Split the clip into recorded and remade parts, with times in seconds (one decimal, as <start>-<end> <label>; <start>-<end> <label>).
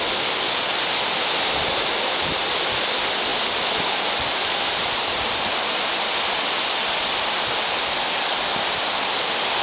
0.0-3.3 remade; 3.3-3.9 recorded; 3.9-9.6 remade